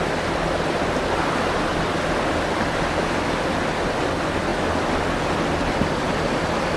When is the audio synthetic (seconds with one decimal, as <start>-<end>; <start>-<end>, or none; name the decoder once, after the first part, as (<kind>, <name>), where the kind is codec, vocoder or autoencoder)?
none